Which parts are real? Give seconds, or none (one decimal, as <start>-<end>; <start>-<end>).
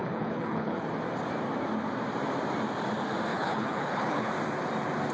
0.9-3.3; 4.3-5.1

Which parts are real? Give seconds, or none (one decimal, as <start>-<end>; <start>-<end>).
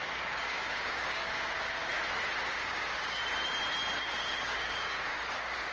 1.9-2.5; 3.2-4.0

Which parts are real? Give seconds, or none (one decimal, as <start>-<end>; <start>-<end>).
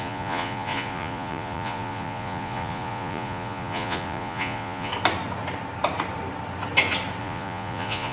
4.9-7.2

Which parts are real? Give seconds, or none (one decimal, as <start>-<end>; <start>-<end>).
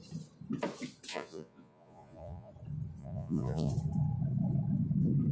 0.0-1.1; 2.5-3.0; 3.7-5.3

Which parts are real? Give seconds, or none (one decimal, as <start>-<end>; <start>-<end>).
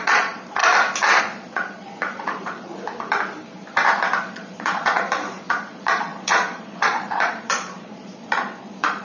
0.6-1.2; 2.7-4.2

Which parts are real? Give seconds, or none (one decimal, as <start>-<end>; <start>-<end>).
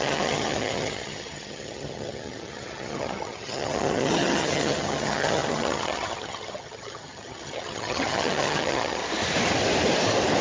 9.0-10.4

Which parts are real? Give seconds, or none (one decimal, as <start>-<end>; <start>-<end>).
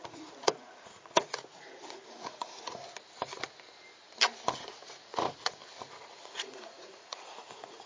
2.8-4.6; 5.6-6.2